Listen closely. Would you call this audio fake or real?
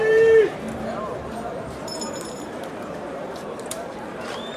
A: fake